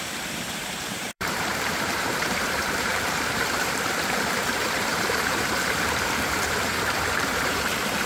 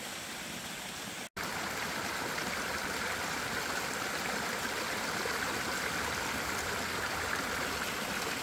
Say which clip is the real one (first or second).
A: second